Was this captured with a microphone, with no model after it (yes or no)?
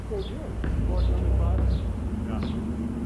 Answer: yes